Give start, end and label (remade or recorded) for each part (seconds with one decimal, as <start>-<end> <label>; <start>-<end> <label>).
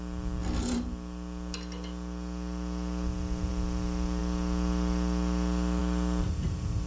0.0-6.9 recorded